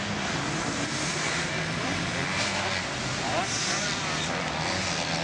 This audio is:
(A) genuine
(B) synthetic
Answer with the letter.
A